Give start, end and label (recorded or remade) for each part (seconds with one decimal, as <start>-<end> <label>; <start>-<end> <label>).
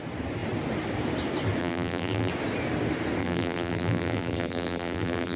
0.0-1.6 recorded; 1.6-2.3 remade; 2.3-3.2 recorded; 3.2-5.4 remade